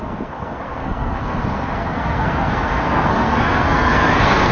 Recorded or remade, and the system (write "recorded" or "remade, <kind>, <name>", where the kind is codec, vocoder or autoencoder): remade, codec, SNAC